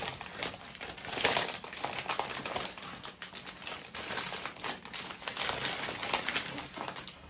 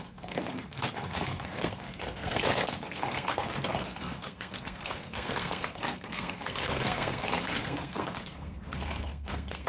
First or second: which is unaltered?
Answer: first